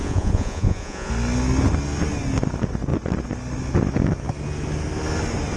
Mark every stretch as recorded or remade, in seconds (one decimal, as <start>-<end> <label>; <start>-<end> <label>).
0.0-1.1 remade; 1.1-5.6 recorded